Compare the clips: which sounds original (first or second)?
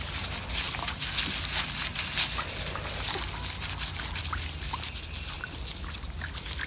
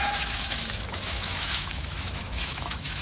first